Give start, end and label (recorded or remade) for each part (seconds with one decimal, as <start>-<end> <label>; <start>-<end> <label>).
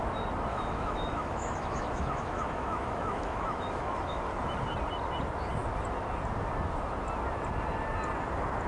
0.0-0.5 recorded; 0.5-4.2 remade; 4.2-8.7 recorded